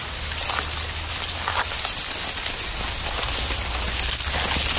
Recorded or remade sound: recorded